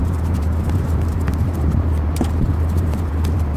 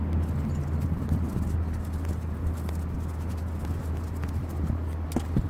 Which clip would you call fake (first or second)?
first